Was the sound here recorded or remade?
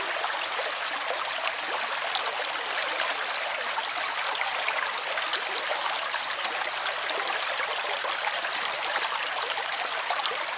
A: recorded